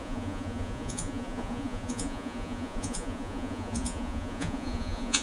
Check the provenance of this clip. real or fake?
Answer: fake